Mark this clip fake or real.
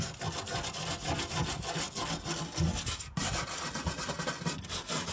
real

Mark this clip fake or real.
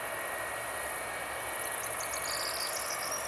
real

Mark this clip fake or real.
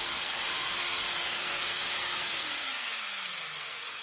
fake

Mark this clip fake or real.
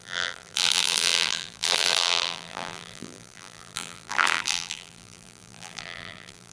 fake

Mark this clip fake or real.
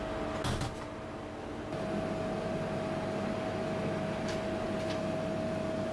real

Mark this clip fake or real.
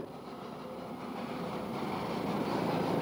real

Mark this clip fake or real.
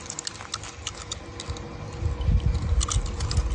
real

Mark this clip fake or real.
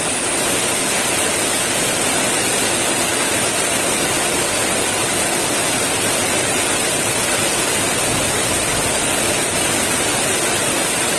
fake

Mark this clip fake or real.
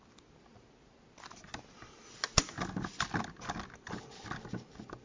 real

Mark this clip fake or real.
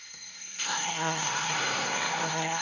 fake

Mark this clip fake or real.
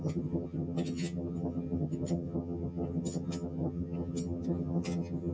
fake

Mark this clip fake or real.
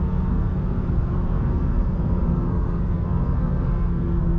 fake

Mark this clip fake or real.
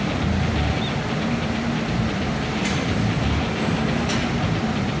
real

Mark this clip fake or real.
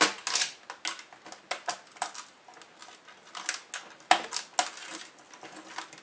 real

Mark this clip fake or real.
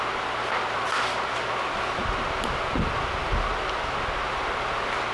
real